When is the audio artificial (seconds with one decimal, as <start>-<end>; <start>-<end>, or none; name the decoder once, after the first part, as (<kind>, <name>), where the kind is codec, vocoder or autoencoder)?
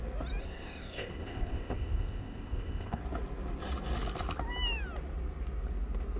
0.4-3.0 (codec, ZipCodec)